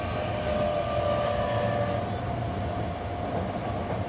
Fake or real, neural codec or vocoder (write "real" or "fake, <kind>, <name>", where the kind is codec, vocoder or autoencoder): real